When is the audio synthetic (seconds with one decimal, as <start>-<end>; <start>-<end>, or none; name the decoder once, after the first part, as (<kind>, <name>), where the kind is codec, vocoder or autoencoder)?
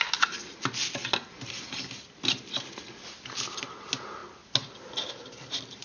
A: none